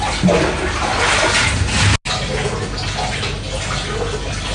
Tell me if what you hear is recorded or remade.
recorded